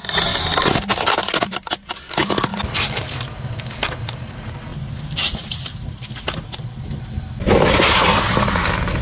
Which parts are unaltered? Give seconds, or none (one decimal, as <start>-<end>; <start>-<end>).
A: 0.0-9.0